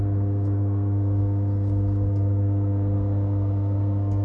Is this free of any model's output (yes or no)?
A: no